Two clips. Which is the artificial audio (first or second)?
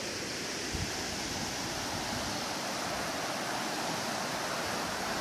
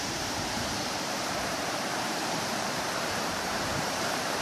second